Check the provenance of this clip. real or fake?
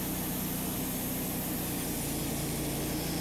real